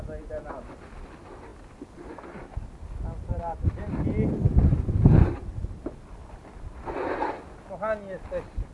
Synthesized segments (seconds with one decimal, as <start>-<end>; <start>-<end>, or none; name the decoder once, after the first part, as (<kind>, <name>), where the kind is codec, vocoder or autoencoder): 3.3-3.9 (vocoder, BigVGAN v2); 4.7-5.5